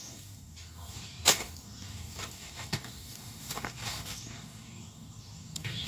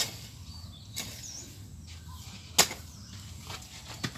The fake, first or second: first